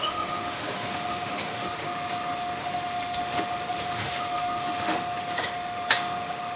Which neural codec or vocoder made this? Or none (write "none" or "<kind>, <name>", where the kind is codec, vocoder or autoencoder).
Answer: autoencoder, DAC-VAE